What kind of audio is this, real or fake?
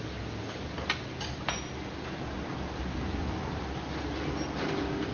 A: real